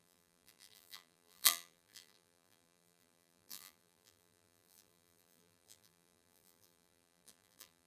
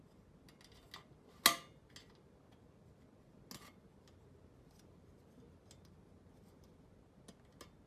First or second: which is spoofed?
first